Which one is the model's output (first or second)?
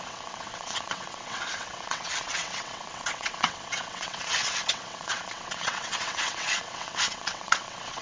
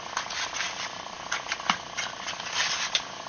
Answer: first